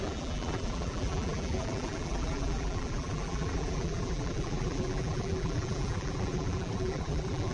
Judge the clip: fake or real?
fake